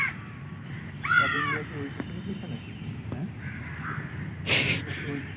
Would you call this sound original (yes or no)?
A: no